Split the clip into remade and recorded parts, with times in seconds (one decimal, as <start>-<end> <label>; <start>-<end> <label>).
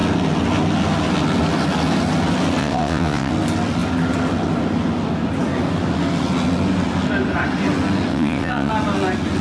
0.0-2.6 recorded; 2.6-3.3 remade; 3.3-8.1 recorded; 8.1-8.7 remade; 8.7-9.4 recorded